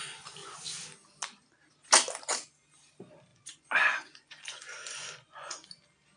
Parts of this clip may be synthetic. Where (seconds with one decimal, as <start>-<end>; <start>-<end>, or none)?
3.3-5.7